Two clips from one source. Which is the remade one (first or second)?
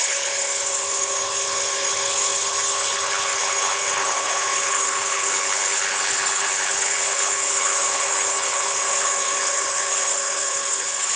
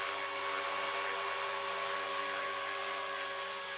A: first